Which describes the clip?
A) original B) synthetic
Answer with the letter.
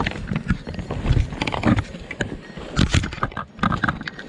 A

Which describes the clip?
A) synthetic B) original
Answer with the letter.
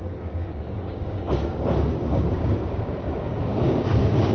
A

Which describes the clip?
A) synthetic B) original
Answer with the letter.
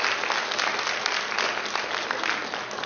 B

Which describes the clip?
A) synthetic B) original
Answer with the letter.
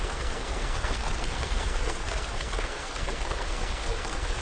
A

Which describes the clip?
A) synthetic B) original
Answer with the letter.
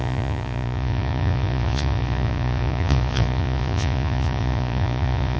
A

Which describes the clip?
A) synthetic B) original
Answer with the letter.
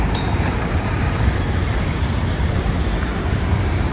A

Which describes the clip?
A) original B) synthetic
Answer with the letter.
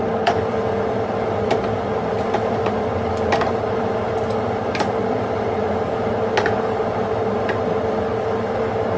A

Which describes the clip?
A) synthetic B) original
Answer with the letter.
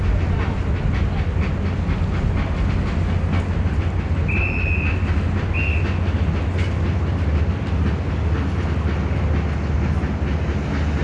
B